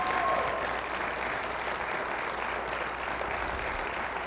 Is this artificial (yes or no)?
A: no